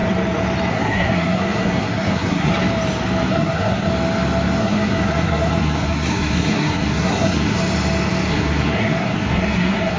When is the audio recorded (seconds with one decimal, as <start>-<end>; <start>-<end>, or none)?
0.0-0.7; 2.5-3.3; 3.9-4.6; 7.6-8.3